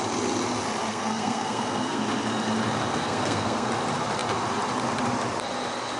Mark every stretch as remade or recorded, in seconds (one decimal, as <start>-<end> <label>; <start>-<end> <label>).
0.0-0.9 recorded; 0.9-2.0 remade; 2.0-2.9 recorded; 2.9-3.7 remade; 3.7-6.0 recorded